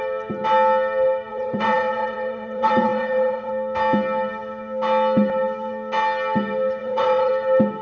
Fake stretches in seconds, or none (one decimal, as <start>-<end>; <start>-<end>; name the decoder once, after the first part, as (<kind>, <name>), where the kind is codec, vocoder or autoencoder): 1.3-3.5 (vocoder, WaveNeXt); 6.8-7.3